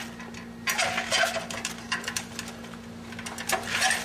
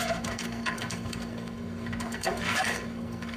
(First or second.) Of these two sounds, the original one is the first